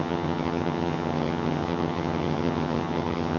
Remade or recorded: remade